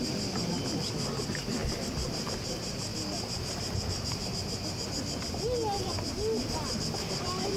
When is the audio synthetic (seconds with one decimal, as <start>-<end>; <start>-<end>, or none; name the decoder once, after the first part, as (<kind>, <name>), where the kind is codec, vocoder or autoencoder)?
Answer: none